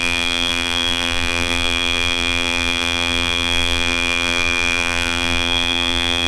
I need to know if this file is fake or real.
fake